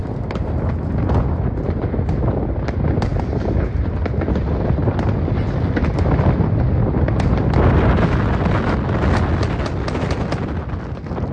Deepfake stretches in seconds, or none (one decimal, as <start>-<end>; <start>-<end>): none